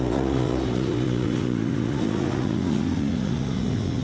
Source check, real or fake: fake